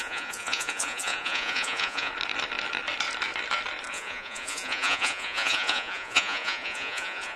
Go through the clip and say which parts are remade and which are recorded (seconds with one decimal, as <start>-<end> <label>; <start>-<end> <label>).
0.0-2.1 remade; 2.1-3.9 recorded; 3.9-7.4 remade